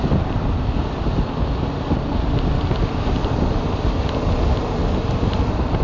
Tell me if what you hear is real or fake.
real